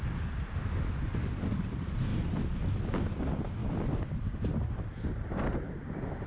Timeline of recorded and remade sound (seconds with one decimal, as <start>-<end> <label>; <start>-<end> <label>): 0.0-2.1 recorded; 2.1-2.7 remade; 2.7-3.6 recorded; 3.6-6.3 remade